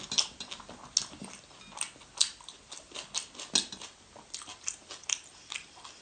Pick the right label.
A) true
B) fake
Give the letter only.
A